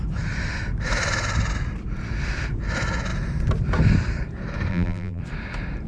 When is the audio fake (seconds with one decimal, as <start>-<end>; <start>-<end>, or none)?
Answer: 4.7-5.2